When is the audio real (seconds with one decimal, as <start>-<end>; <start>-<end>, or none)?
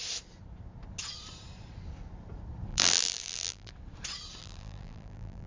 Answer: 0.0-2.7; 3.7-4.4